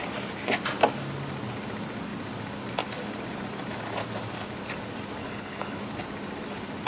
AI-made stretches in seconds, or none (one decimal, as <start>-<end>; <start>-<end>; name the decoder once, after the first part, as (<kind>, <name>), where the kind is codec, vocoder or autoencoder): 5.2-5.8 (codec, HILCodec)